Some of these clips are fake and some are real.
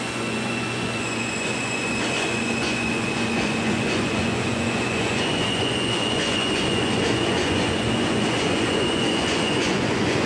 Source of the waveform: fake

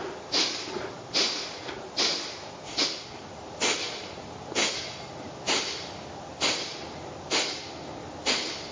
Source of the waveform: real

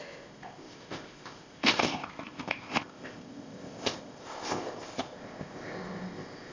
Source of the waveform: fake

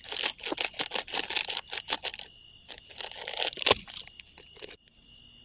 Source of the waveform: real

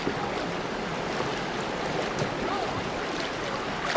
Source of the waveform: real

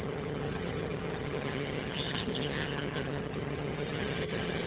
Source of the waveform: fake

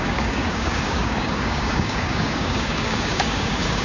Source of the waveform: fake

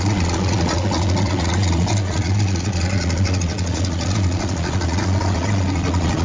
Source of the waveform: fake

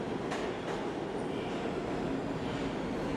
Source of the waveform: real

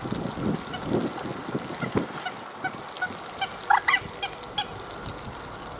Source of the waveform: real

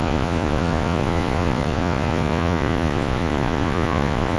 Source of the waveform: fake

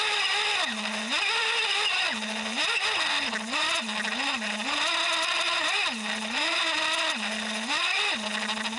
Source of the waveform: real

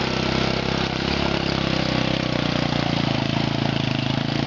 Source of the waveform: real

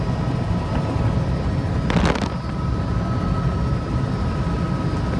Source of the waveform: real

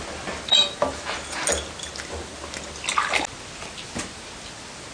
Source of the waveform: real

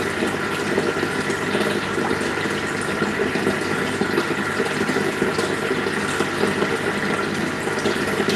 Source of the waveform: real